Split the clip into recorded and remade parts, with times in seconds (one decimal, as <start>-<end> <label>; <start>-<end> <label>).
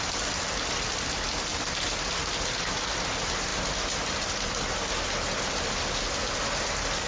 0.0-7.1 recorded